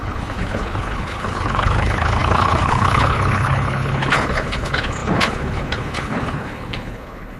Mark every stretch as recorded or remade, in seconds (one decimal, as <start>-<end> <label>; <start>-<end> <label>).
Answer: 0.0-7.4 remade